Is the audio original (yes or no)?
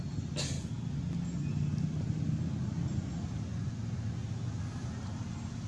yes